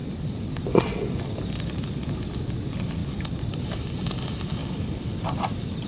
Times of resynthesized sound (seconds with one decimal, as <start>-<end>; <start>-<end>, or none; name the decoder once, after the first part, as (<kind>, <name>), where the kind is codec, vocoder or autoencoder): 0.0-0.5 (vocoder, BigVGAN v2); 4.6-5.9